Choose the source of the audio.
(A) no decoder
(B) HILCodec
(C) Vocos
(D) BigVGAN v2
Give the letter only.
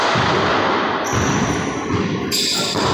A